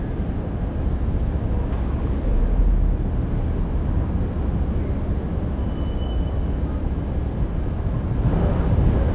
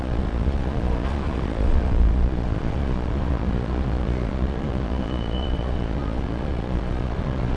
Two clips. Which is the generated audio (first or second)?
second